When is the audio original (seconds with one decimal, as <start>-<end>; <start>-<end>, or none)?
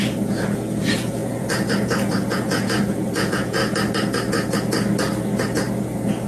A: 3.6-6.3